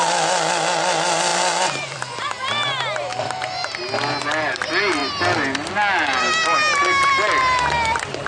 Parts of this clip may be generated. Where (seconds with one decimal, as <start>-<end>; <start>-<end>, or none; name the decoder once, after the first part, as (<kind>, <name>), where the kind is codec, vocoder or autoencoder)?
1.3-2.2 (vocoder, BigVGAN v2); 3.1-3.8